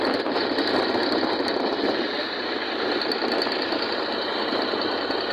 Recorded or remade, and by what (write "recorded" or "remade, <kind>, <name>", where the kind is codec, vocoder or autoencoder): recorded